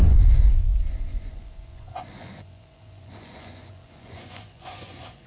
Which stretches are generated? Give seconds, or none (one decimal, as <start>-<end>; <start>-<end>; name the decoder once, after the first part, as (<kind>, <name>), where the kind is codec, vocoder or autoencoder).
0.0-5.3 (vocoder, Vocos)